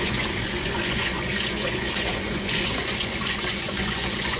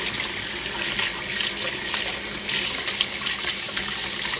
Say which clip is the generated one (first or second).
first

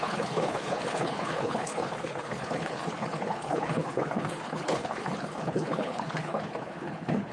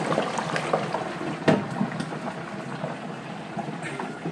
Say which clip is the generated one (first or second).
first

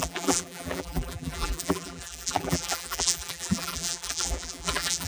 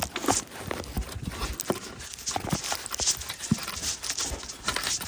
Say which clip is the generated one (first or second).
first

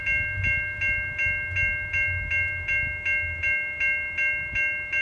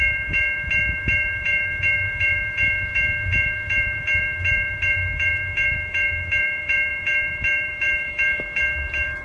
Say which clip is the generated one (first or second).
second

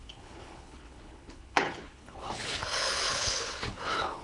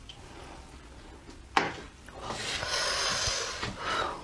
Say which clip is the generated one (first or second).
first